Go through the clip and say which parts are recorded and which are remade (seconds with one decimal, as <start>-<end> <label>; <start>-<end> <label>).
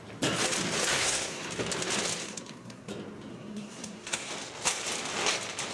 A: 0.0-0.9 recorded; 0.9-1.5 remade; 1.5-2.2 recorded; 2.2-2.9 remade; 2.9-3.3 recorded; 3.3-4.3 remade; 4.3-5.7 recorded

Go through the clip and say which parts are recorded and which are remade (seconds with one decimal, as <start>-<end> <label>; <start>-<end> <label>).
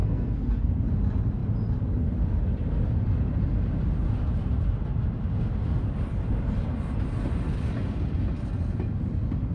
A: 0.0-0.7 remade; 0.7-9.5 recorded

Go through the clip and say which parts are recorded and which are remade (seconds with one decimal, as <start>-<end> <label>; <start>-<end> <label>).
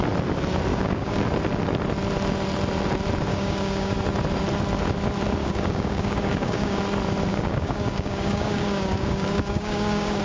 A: 0.0-0.7 recorded; 0.7-1.2 remade; 1.2-3.3 recorded; 3.3-4.0 remade; 4.0-5.4 recorded; 5.4-6.8 remade; 6.8-7.3 recorded; 7.3-10.2 remade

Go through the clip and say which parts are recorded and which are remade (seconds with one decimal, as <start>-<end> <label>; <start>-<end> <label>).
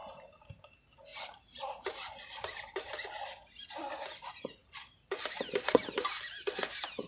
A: 0.0-0.6 remade; 0.6-1.1 recorded; 1.1-2.9 remade; 2.9-7.1 recorded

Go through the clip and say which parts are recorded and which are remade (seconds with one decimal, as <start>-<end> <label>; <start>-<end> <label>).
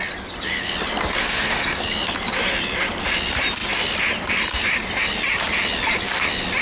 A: 0.0-1.2 recorded; 1.2-1.8 remade; 1.8-6.6 recorded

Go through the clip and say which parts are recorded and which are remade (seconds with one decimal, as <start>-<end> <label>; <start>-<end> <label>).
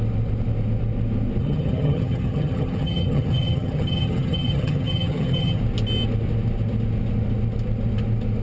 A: 0.0-1.4 recorded; 1.4-5.6 remade; 5.6-8.4 recorded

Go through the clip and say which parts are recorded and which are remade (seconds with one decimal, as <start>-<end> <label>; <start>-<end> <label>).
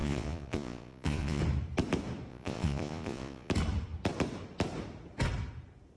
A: 0.0-1.4 remade; 1.4-2.3 recorded; 2.3-3.5 remade; 3.5-6.0 recorded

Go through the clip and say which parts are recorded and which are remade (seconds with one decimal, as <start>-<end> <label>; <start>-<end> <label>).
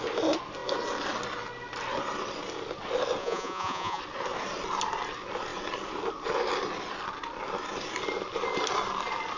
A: 0.0-3.2 recorded; 3.2-4.0 remade; 4.0-9.4 recorded